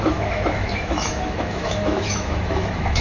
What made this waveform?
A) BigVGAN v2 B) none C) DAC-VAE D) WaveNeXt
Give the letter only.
C